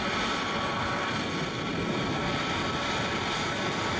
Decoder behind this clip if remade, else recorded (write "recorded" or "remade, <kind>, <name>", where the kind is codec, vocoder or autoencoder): recorded